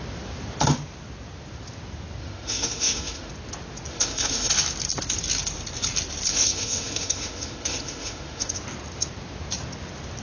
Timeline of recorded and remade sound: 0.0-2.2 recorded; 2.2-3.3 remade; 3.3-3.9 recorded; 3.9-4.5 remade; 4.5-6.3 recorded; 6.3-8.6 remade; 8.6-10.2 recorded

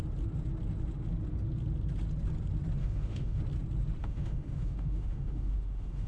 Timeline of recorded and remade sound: 0.0-2.8 recorded; 2.8-3.4 remade; 3.4-4.0 recorded; 4.0-6.1 remade

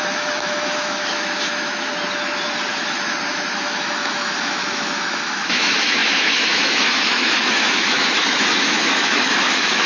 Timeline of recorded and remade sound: 0.0-1.9 remade; 1.9-3.6 recorded; 3.6-9.9 remade